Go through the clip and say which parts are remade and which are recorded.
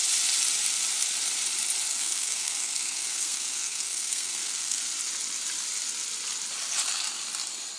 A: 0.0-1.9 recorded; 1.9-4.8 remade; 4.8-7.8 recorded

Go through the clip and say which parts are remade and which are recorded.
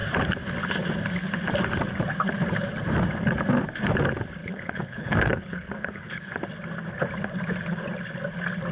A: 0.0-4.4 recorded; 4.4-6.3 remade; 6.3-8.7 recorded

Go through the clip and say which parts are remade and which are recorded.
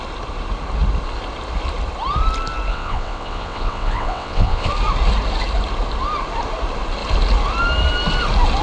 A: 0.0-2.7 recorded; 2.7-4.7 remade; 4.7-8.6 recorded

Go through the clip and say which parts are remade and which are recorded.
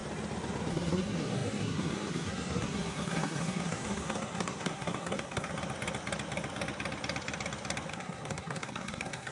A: 0.0-0.7 recorded; 0.7-5.5 remade; 5.5-7.9 recorded; 7.9-9.3 remade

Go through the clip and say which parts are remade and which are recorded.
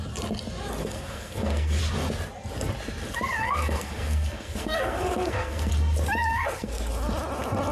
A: 0.0-0.8 recorded; 0.8-1.8 remade; 1.8-3.4 recorded; 3.4-5.7 remade; 5.7-6.3 recorded; 6.3-6.9 remade; 6.9-7.7 recorded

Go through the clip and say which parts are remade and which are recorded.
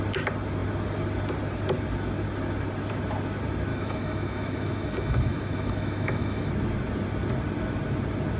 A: 0.0-3.7 recorded; 3.7-6.5 remade; 6.5-8.4 recorded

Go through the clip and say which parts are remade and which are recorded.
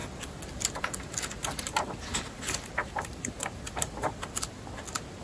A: 0.0-1.4 recorded; 1.4-2.4 remade; 2.4-2.8 recorded; 2.8-4.1 remade; 4.1-5.2 recorded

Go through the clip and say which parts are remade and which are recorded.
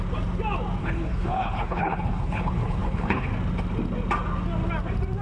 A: 0.0-0.8 recorded; 0.8-3.3 remade; 3.3-5.2 recorded